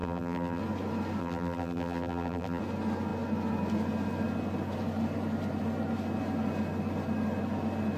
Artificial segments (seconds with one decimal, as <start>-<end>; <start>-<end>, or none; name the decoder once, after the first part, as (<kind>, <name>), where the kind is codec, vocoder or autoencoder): 0.0-0.6 (vocoder, BigVGAN v2); 1.2-2.6